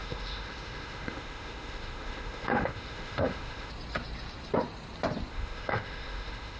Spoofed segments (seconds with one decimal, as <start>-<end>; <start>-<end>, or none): 0.0-3.7; 5.3-6.6

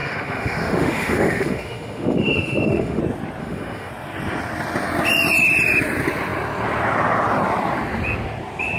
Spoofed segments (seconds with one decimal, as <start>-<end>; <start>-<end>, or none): 0.0-3.0; 3.4-3.9